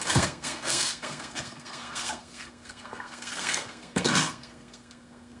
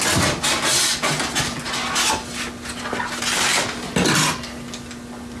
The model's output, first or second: first